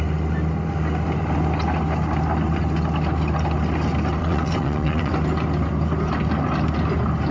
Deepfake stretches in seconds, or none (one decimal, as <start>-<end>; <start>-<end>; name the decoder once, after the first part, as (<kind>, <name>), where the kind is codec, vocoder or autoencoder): 4.2-5.1 (vocoder, WaveNeXt)